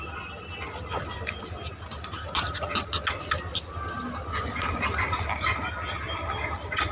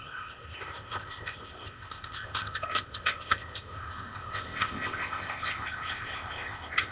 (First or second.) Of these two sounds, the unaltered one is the first